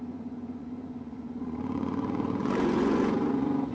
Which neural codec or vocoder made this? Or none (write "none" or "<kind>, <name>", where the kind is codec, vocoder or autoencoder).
vocoder, Vocos